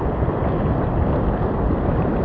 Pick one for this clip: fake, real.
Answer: real